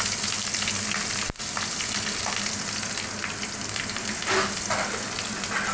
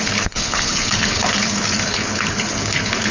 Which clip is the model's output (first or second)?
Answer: second